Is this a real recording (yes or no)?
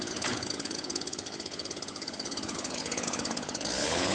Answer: no